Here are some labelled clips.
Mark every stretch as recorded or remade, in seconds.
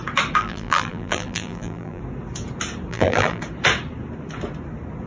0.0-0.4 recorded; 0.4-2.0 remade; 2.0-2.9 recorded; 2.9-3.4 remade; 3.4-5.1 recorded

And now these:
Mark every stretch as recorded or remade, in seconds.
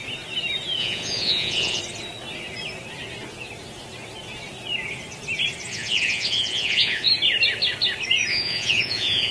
0.0-0.8 recorded; 0.8-1.8 remade; 1.8-5.7 recorded; 5.7-7.1 remade; 7.1-8.3 recorded; 8.3-9.3 remade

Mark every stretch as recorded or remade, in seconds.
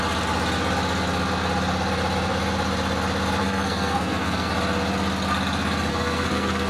0.0-3.4 recorded; 3.4-4.5 remade; 4.5-5.9 recorded; 5.9-6.7 remade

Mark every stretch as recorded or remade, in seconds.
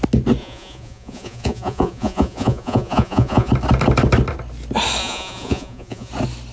0.0-0.4 recorded; 0.4-3.5 remade; 3.5-5.0 recorded; 5.0-6.1 remade; 6.1-6.5 recorded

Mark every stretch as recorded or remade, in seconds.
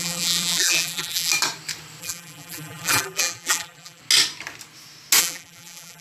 0.0-1.3 remade; 1.3-2.0 recorded; 2.0-4.0 remade; 4.0-5.2 recorded; 5.2-6.0 remade